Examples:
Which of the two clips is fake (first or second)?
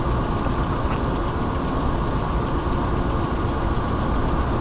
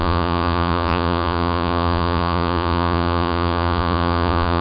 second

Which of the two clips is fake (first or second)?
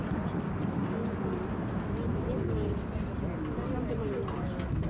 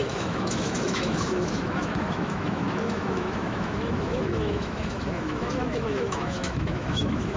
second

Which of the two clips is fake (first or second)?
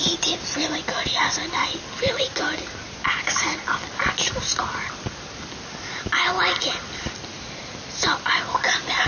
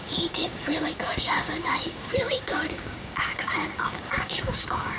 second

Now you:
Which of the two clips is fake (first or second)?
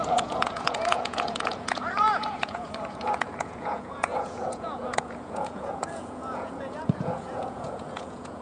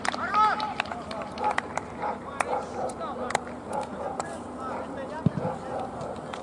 first